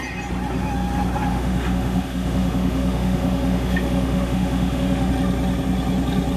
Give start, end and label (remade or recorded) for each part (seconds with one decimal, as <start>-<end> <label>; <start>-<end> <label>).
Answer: 0.0-1.3 recorded; 1.3-5.1 remade; 5.1-6.4 recorded